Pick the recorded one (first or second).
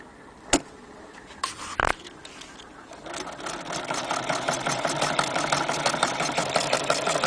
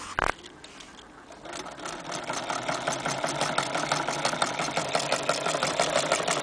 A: second